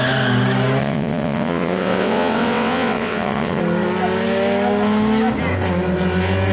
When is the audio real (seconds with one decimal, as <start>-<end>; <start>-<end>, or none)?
0.0-0.8; 3.6-6.5